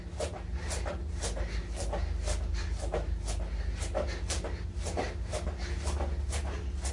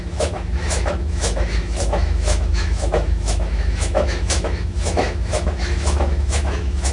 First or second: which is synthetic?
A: second